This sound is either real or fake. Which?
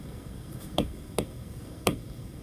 fake